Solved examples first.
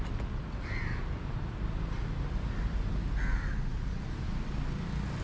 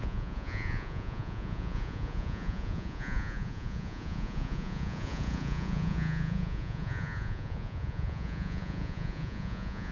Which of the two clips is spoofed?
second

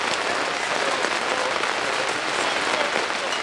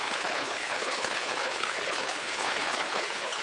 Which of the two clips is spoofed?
second